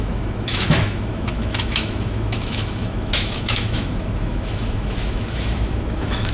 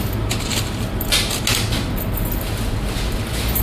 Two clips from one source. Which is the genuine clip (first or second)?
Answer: second